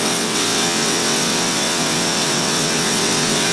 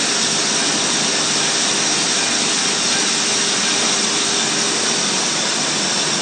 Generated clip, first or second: first